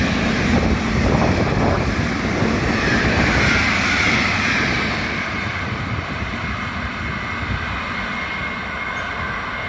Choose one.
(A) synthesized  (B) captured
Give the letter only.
B